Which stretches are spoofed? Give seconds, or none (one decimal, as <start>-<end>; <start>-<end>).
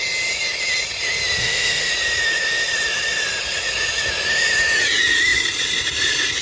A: 1.4-1.9